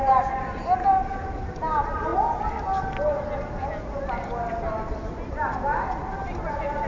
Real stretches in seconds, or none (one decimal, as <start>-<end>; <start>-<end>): 0.0-6.9